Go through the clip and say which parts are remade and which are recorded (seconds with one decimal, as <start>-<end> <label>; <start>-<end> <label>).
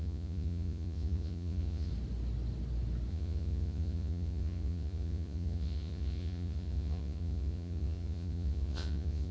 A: 0.0-1.9 remade; 1.9-3.1 recorded; 3.1-9.3 remade